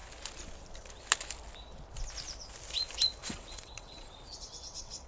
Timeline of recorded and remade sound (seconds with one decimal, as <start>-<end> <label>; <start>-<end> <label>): 0.0-3.2 recorded; 3.2-5.1 remade